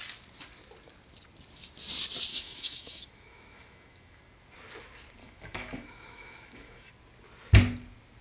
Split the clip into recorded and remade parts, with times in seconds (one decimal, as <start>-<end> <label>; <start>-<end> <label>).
0.0-2.3 recorded; 2.3-4.2 remade; 4.2-5.2 recorded; 5.2-6.9 remade; 6.9-8.2 recorded